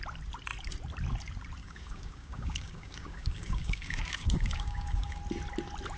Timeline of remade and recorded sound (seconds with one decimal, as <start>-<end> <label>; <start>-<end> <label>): 0.0-1.6 recorded; 1.6-5.2 remade; 5.2-6.0 recorded